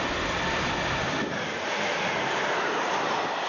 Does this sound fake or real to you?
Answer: real